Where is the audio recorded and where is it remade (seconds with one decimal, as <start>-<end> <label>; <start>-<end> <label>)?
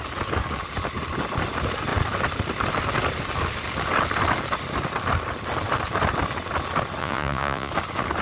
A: 0.0-7.0 recorded; 7.0-7.7 remade; 7.7-8.2 recorded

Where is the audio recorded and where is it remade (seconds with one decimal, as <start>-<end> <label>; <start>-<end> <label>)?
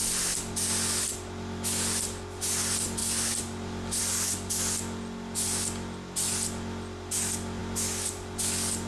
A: 0.0-8.9 recorded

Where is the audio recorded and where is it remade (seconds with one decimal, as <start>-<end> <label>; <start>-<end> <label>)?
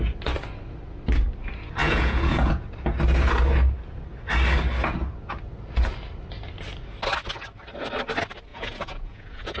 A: 0.0-1.8 recorded; 1.8-2.6 remade; 2.6-8.5 recorded; 8.5-9.6 remade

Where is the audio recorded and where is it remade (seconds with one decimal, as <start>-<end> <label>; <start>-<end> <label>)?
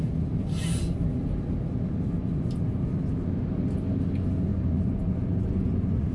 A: 0.0-4.5 recorded; 4.5-6.1 remade